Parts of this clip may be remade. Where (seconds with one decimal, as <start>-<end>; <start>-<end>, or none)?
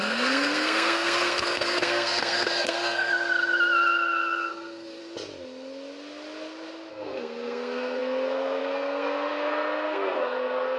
0.0-3.1; 4.5-5.0; 6.9-10.8